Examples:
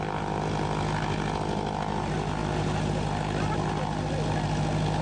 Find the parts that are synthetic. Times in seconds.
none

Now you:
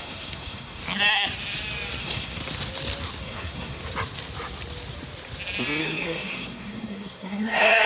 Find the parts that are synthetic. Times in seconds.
0.0-0.8 (codec, SNAC); 2.0-2.4; 3.2-3.8; 5.8-7.9